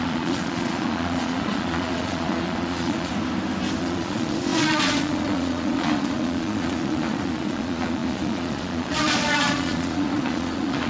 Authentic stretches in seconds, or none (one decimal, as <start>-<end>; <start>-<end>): 3.1-3.8